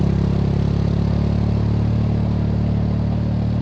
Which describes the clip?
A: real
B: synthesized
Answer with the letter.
A